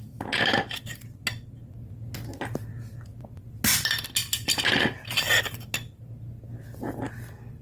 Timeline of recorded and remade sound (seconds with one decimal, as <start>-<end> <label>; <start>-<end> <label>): 0.0-7.6 recorded